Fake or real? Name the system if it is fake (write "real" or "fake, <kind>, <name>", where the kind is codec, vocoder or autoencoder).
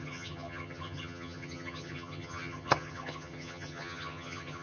fake, vocoder, HiFi-GAN